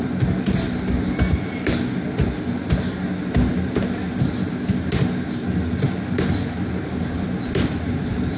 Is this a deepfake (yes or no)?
no